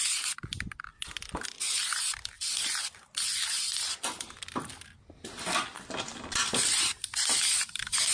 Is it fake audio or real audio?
real